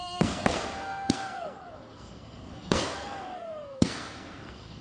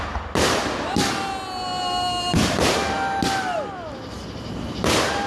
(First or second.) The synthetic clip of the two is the first